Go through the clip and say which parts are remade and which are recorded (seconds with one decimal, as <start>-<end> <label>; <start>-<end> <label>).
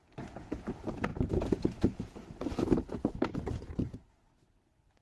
0.0-0.7 remade; 0.7-1.1 recorded; 1.1-4.1 remade; 4.1-5.0 recorded